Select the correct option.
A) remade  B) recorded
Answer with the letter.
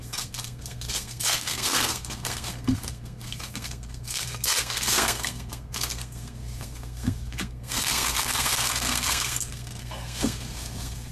A